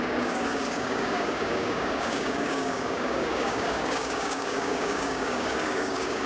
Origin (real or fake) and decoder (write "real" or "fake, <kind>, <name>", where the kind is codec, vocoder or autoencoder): fake, codec, DAC